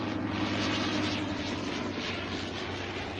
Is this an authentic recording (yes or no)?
yes